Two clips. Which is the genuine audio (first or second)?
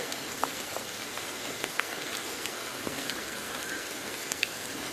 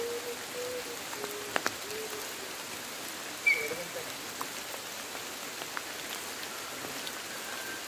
second